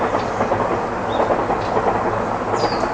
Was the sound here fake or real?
real